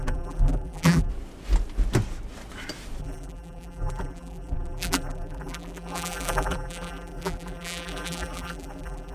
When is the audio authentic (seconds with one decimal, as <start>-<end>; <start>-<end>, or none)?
1.1-3.0